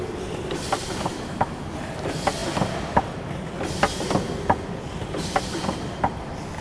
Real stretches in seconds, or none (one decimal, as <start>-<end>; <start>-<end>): 0.0-1.1; 1.7-6.6